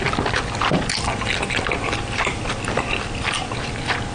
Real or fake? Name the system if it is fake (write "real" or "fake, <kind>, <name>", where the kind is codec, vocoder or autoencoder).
fake, vocoder, BigVGAN v2